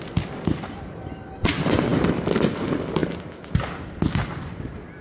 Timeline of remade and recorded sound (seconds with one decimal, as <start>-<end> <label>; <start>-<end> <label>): 0.0-5.0 recorded